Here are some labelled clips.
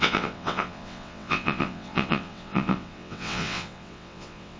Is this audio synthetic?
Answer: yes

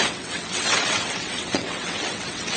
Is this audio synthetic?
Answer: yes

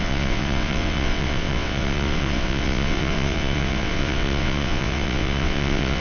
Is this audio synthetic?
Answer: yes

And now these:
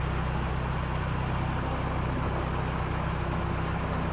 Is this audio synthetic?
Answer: no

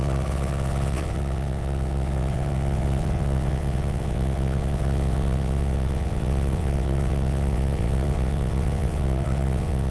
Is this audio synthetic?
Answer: yes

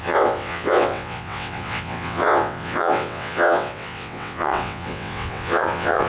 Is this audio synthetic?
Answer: yes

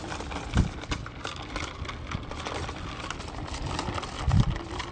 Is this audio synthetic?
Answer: no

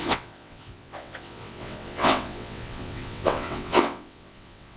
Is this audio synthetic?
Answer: yes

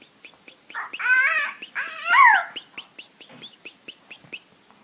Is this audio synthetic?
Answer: no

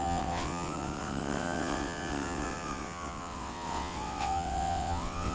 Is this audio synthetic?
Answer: yes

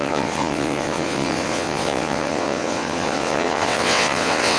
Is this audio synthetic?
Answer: yes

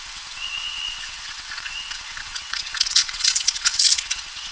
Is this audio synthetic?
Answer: yes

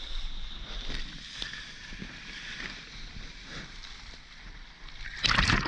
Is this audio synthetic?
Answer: no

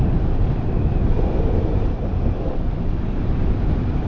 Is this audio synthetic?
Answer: no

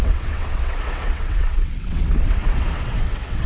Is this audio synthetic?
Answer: yes